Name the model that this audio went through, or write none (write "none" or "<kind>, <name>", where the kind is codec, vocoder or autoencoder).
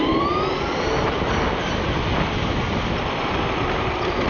none